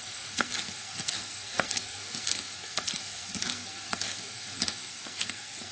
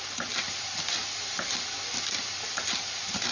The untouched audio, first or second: second